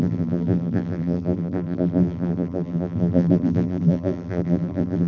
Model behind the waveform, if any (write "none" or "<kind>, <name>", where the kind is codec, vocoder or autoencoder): vocoder, BigVGAN v2